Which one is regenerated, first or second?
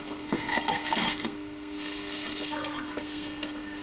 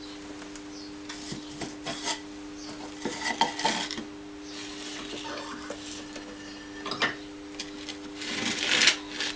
first